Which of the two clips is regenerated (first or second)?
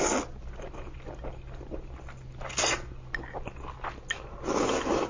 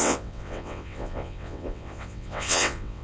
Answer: second